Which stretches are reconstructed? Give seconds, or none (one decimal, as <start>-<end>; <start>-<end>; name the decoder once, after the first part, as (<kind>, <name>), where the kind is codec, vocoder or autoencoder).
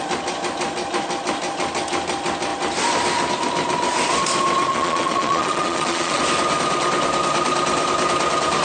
4.7-6.2 (vocoder, Vocos)